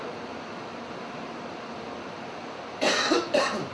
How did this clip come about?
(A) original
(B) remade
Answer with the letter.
B